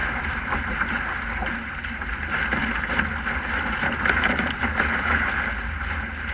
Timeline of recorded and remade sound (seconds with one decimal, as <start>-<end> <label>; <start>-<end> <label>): 0.0-0.8 remade; 0.8-1.4 recorded; 1.4-2.2 remade; 2.2-4.6 recorded; 4.6-5.5 remade; 5.5-6.3 recorded